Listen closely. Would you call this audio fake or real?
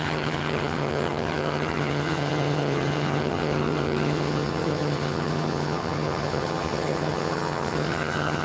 fake